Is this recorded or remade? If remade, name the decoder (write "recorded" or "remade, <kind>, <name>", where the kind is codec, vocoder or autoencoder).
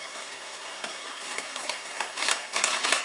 remade, codec, SNAC